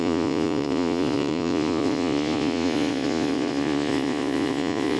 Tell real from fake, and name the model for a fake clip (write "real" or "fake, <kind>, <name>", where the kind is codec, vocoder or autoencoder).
fake, vocoder, Vocos